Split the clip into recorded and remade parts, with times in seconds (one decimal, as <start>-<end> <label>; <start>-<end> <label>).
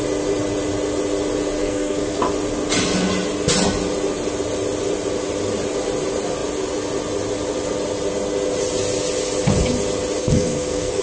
0.0-1.6 recorded; 1.6-2.2 remade; 2.2-10.2 recorded; 10.2-11.0 remade